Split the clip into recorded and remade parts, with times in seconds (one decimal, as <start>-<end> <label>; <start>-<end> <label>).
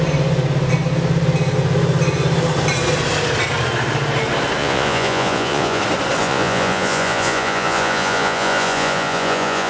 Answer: 0.0-4.6 recorded; 4.6-5.8 remade; 5.8-6.2 recorded; 6.2-9.7 remade